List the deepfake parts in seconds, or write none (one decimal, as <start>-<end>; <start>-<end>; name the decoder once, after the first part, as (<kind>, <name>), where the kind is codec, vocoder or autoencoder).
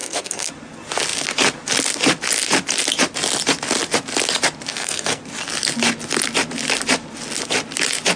0.0-0.5 (codec, SNAC); 4.7-5.2